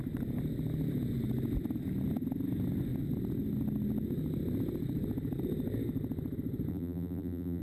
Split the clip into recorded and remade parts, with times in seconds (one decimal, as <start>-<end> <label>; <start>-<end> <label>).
0.0-6.7 recorded; 6.7-7.6 remade